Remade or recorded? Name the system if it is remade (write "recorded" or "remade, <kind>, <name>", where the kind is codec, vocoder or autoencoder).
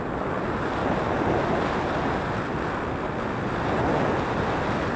recorded